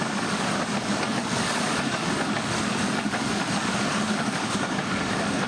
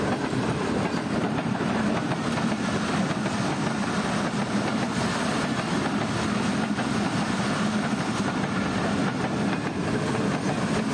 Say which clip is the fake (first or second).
first